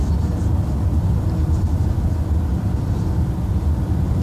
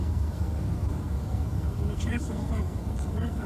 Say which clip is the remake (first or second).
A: second